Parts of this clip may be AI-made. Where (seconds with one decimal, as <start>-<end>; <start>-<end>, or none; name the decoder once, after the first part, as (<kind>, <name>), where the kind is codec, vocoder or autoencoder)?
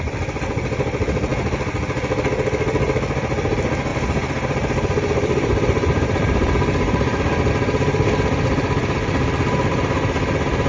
3.9-7.5 (vocoder, BigVGAN v2)